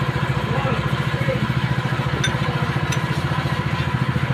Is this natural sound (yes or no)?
yes